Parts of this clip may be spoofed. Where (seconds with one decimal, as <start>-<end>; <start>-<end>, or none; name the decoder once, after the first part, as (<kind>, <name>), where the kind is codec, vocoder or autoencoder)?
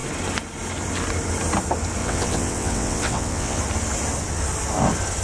2.0-3.6 (vocoder, WaveNeXt)